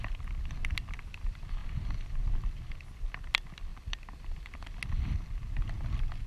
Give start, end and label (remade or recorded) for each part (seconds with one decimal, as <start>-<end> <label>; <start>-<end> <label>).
0.0-3.7 recorded; 3.7-4.6 remade; 4.6-6.3 recorded

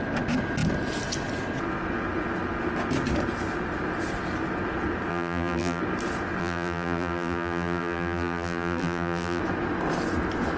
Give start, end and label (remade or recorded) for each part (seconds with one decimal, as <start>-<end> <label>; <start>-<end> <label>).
0.0-5.1 recorded; 5.1-5.8 remade; 5.8-6.4 recorded; 6.4-9.4 remade; 9.4-10.6 recorded